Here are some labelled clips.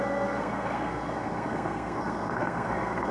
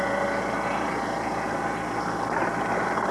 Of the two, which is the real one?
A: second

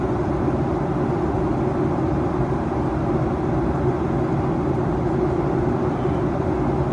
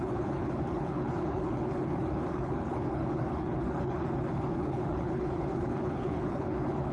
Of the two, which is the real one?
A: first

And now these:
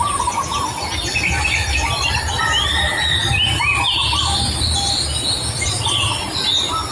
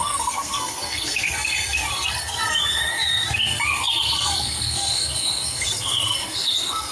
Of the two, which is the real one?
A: first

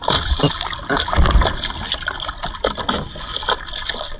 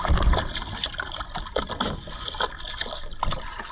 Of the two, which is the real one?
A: first